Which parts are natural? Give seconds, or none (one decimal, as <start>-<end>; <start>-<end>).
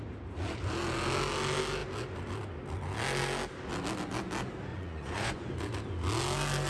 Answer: 0.0-4.7; 5.5-6.7